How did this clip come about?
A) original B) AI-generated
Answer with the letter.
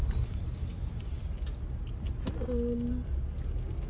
A